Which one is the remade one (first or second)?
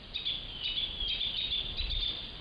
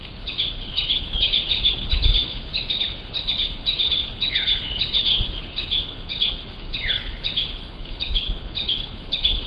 second